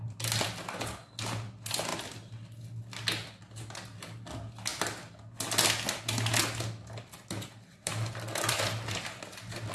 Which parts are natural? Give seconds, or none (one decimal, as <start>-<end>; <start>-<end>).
0.0-9.7